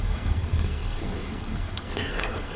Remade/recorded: remade